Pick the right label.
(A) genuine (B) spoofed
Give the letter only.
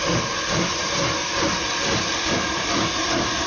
A